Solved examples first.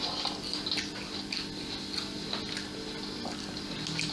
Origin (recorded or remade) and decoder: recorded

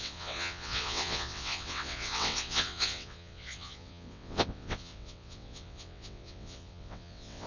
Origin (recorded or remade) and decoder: remade, vocoder, WaveNeXt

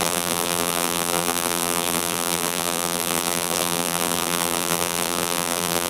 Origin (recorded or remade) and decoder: remade, vocoder, BigVGAN v2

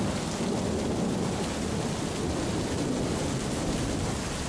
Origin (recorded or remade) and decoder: recorded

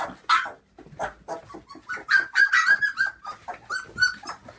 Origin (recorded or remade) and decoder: recorded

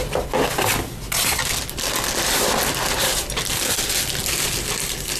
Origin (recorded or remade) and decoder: recorded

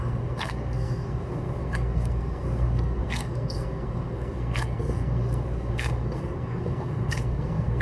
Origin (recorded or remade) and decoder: remade, codec, SNAC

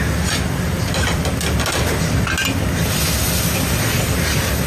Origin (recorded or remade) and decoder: recorded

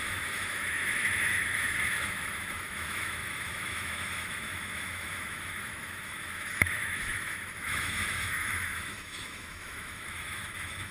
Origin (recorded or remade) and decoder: remade, autoencoder, DAC-VAE